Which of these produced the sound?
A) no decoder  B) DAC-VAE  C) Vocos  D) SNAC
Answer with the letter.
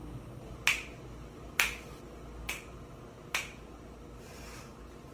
A